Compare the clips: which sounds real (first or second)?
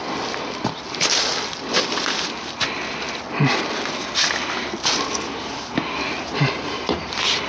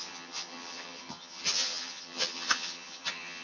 first